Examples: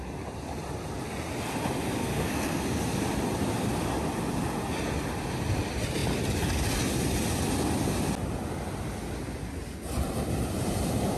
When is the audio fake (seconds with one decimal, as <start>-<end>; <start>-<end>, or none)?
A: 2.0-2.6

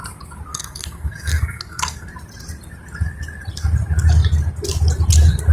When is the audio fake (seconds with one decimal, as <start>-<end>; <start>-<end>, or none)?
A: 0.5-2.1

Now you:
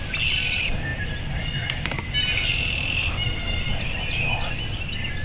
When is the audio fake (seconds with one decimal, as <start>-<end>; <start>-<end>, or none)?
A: none